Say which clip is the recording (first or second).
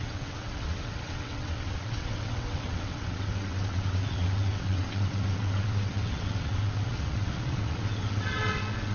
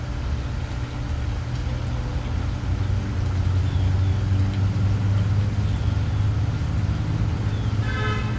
second